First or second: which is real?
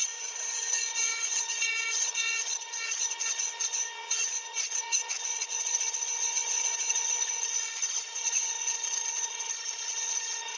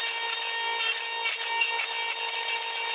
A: second